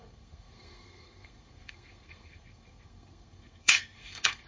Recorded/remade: remade